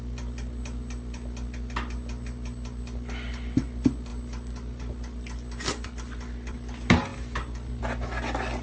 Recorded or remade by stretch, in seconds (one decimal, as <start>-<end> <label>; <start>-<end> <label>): 0.0-8.6 recorded